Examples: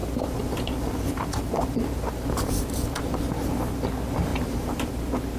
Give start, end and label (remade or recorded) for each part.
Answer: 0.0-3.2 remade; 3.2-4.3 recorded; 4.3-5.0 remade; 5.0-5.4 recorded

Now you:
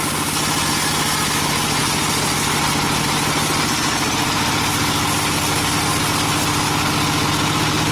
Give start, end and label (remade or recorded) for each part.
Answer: 0.0-7.9 recorded

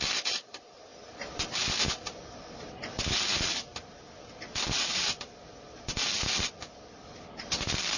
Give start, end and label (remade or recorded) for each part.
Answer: 0.0-0.9 remade; 0.9-1.8 recorded; 1.8-3.7 remade; 3.7-6.2 recorded; 6.2-8.0 remade

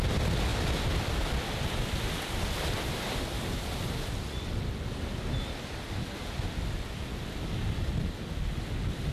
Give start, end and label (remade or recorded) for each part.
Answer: 0.0-9.1 recorded

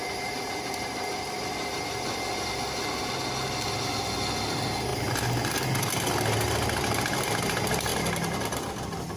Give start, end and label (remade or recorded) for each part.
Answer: 0.0-2.1 remade; 2.1-9.2 recorded